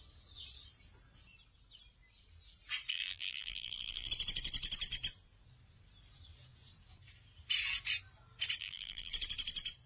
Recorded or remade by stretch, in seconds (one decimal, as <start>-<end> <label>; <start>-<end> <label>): 0.0-2.9 recorded; 2.9-4.1 remade; 4.1-8.6 recorded; 8.6-9.1 remade; 9.1-9.9 recorded